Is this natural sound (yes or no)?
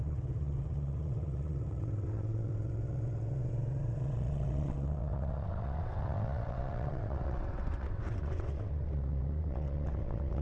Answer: no